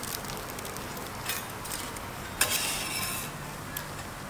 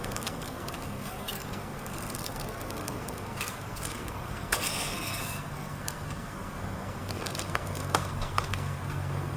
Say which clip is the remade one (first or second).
second